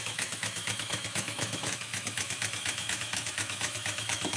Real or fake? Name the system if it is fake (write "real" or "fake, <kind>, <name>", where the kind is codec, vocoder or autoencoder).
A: fake, autoencoder, DAC-VAE